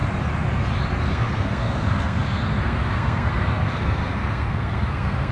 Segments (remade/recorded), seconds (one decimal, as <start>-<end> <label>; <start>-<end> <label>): 0.0-1.1 recorded; 1.1-5.3 remade